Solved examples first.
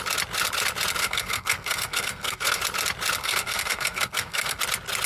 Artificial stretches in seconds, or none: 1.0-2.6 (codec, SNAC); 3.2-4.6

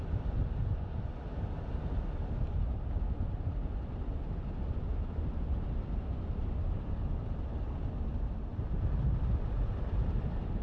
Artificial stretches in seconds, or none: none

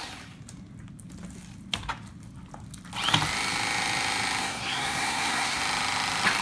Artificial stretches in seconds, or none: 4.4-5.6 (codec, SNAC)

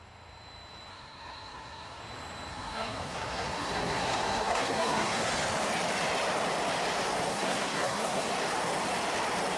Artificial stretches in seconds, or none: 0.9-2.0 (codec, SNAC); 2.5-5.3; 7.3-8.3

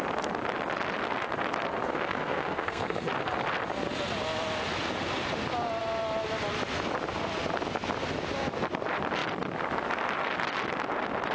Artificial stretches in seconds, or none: 1.8-3.1 (codec, SNAC)

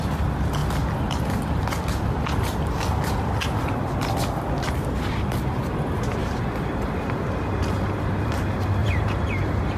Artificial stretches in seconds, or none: 6.2-6.9 (vocoder, BigVGAN v2); 8.8-9.8

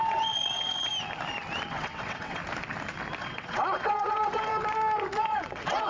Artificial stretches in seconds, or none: 0.0-0.9 (vocoder, WaveNeXt); 1.7-2.4; 3.2-4.5; 5.2-5.9

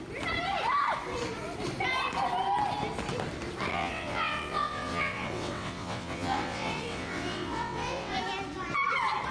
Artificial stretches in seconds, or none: 3.7-8.2 (vocoder, WaveNeXt)